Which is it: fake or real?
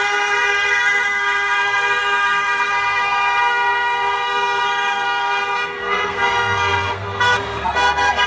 fake